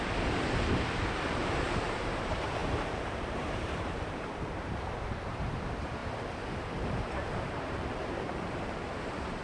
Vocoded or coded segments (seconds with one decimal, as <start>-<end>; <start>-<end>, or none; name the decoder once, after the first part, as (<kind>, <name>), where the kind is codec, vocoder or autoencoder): 0.0-9.4 (vocoder, BigVGAN v2)